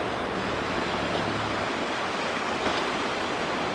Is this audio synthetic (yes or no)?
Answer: no